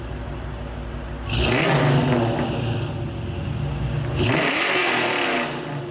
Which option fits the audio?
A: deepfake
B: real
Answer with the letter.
B